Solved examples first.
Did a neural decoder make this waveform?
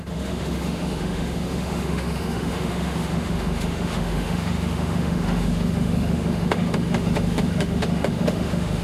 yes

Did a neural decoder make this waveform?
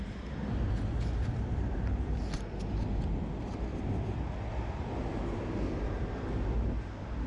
no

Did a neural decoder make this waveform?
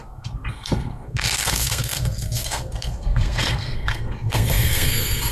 yes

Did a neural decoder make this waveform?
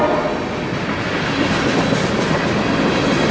no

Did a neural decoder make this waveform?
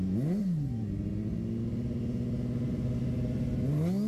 no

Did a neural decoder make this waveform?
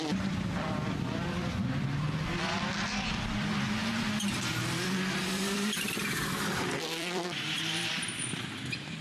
yes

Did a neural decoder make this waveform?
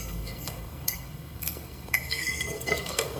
yes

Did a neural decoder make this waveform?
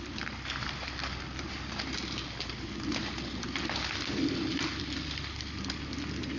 no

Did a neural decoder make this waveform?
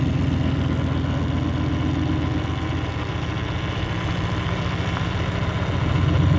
no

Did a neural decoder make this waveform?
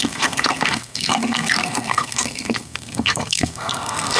yes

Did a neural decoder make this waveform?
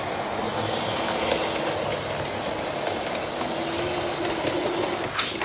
no